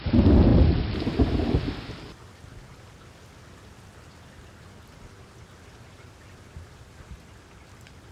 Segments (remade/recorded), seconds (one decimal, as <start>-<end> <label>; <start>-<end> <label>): 0.0-8.1 recorded